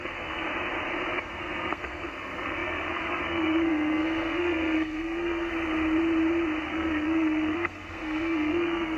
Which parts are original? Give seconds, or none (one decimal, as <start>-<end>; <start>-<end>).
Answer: 0.5-1.3; 5.5-6.6